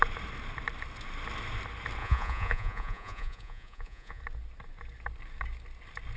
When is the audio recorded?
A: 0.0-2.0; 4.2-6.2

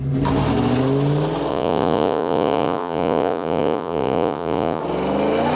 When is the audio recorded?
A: 0.0-1.5; 4.8-5.5